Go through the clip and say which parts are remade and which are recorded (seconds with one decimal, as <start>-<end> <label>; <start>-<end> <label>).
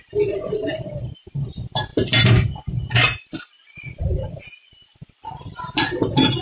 0.0-6.4 remade